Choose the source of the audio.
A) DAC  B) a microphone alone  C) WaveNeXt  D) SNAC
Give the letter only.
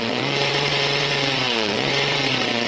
C